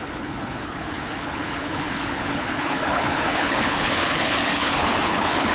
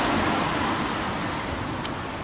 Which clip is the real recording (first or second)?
second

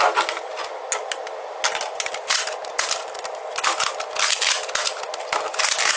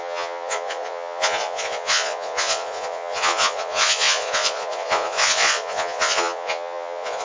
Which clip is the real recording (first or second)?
first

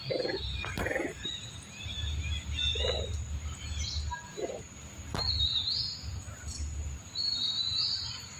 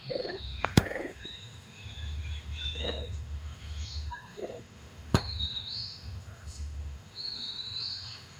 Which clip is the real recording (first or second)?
first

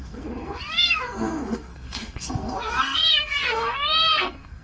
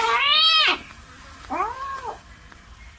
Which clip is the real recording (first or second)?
second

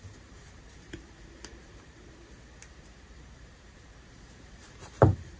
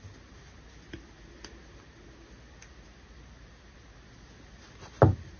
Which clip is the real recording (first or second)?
second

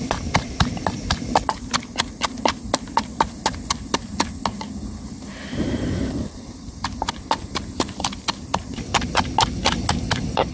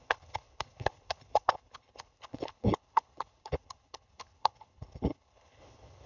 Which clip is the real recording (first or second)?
first